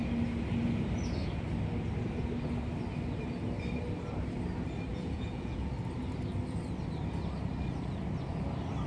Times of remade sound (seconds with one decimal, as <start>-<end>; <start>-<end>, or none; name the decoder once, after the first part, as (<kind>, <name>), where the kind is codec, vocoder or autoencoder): 4.9-5.7 (vocoder, Vocos)

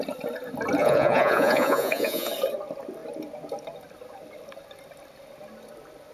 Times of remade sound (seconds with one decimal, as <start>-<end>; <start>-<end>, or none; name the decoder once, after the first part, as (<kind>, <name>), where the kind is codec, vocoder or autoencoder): 0.8-2.3 (vocoder, Vocos)

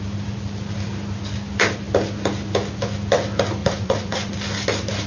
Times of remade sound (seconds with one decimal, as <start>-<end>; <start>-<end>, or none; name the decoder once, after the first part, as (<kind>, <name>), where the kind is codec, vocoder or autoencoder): 3.6-4.3 (vocoder, Vocos)

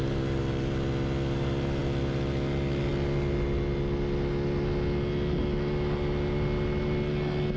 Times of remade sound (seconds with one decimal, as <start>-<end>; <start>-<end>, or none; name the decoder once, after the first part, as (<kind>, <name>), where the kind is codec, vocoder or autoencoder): none

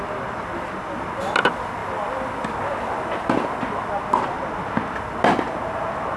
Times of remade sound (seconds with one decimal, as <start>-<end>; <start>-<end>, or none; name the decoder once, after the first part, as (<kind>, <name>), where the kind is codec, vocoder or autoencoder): none